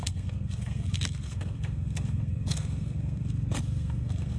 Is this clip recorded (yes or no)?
no